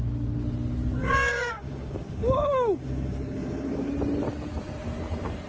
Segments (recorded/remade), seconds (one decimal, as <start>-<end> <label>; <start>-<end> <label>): 0.0-1.0 recorded; 1.0-3.9 remade; 3.9-5.5 recorded